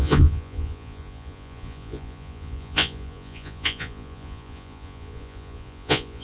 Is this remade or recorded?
remade